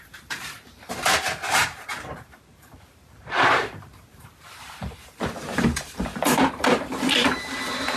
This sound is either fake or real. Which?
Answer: fake